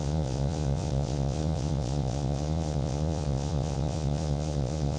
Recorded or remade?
remade